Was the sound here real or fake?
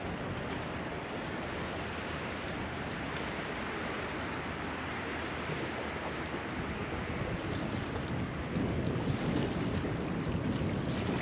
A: real